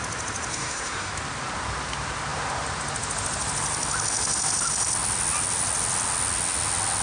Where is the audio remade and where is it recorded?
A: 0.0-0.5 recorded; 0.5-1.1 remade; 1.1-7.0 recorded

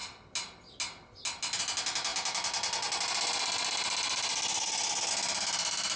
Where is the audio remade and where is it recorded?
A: 0.0-6.0 recorded

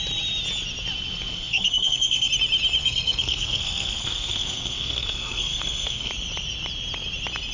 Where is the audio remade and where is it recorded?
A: 0.0-1.3 recorded; 1.3-2.3 remade; 2.3-2.8 recorded; 2.8-6.1 remade; 6.1-7.5 recorded

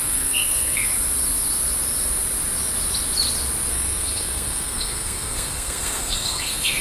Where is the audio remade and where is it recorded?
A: 0.0-0.9 remade; 0.9-3.7 recorded; 3.7-6.8 remade

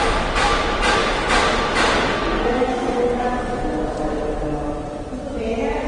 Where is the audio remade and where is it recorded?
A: 0.0-2.1 recorded; 2.1-3.0 remade; 3.0-5.9 recorded

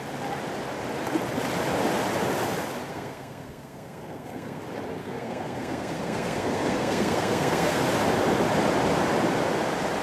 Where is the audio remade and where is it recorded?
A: 0.0-2.9 recorded; 2.9-4.6 remade; 4.6-5.0 recorded; 5.0-7.8 remade; 7.8-10.0 recorded